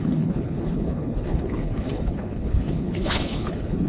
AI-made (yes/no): yes